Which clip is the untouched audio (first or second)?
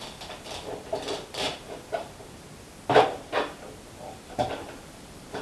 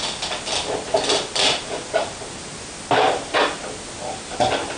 second